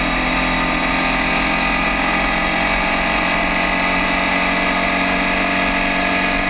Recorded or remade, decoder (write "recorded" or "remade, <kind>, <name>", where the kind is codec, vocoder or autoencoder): recorded